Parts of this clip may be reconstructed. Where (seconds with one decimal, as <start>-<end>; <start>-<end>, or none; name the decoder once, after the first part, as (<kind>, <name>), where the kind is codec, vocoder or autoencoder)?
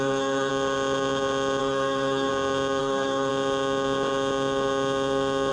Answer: 0.0-0.5 (codec, SNAC); 1.6-2.3; 2.8-3.3